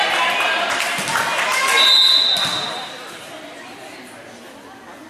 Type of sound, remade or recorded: recorded